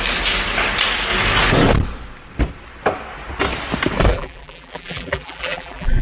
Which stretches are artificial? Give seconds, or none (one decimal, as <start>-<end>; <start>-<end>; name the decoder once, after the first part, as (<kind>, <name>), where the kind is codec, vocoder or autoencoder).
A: 4.1-6.0 (vocoder, BigVGAN v2)